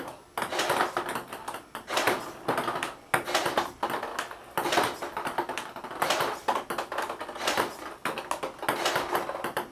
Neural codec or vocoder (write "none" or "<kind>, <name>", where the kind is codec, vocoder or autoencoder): none